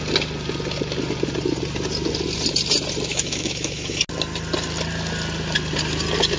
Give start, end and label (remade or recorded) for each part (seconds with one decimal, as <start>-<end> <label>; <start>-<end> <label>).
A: 0.0-3.1 recorded; 3.1-4.0 remade; 4.0-6.4 recorded